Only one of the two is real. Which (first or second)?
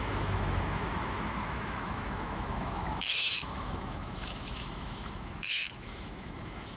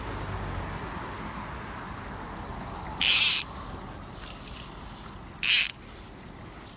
second